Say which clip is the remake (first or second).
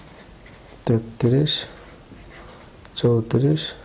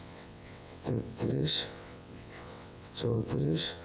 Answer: second